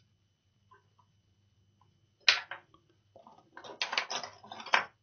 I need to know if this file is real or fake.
real